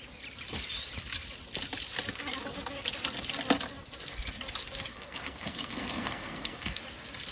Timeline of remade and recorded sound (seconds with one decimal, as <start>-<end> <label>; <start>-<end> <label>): 0.0-4.9 recorded; 4.9-6.8 remade; 6.8-7.3 recorded